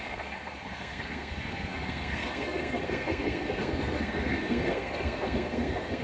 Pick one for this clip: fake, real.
fake